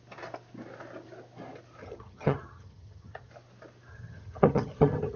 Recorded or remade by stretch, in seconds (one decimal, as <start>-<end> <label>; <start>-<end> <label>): 0.0-1.8 recorded; 1.8-3.3 remade; 3.3-3.9 recorded; 3.9-5.2 remade